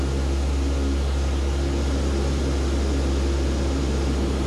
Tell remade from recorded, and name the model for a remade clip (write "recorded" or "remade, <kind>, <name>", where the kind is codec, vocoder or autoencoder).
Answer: recorded